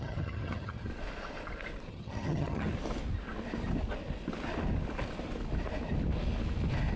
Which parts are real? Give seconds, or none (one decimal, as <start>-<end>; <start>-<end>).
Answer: 0.9-1.9; 2.7-7.0